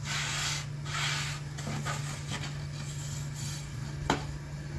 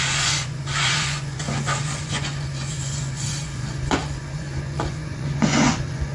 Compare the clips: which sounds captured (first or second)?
first